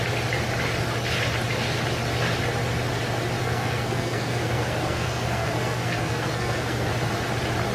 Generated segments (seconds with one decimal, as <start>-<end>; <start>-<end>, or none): 3.4-6.9